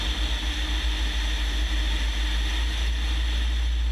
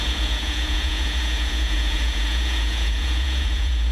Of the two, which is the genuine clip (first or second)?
first